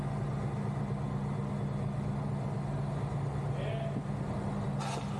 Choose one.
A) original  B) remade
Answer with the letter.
A